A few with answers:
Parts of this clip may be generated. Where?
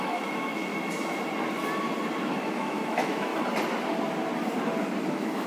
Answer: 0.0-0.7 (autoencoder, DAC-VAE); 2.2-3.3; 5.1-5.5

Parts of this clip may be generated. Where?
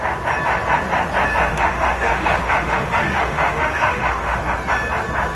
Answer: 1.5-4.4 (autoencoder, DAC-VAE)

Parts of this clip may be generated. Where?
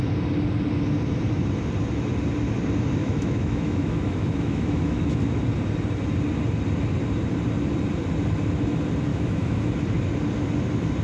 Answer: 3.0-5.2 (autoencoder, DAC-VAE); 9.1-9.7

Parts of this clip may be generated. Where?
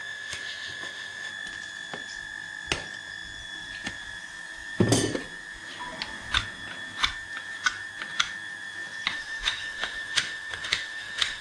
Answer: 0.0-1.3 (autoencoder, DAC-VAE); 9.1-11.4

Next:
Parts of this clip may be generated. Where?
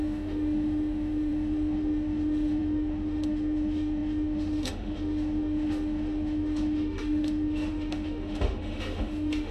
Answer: 0.0-9.5 (autoencoder, DAC-VAE)